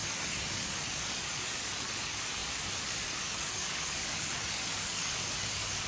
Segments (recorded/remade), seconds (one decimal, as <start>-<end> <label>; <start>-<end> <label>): 0.0-5.9 remade